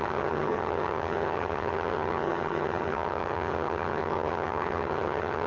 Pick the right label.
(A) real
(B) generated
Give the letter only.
B